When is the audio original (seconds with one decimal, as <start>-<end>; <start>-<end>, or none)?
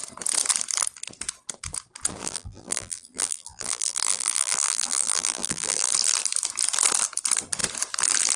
0.0-2.2; 5.9-8.4